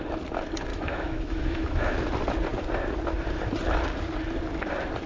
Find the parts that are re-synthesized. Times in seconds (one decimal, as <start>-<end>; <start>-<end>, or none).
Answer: 0.7-1.9